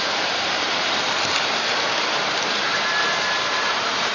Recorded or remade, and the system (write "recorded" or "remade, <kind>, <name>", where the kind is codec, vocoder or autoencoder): remade, vocoder, BigVGAN v2